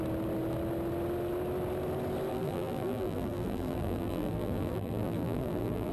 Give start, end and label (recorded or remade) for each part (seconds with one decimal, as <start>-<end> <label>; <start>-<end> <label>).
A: 0.0-2.3 recorded; 2.3-5.9 remade